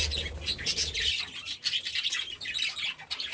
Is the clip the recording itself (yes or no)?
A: yes